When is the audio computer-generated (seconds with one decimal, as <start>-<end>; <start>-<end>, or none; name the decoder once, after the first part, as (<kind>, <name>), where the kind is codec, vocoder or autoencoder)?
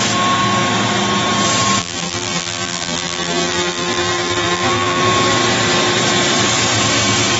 1.8-5.0 (vocoder, BigVGAN v2)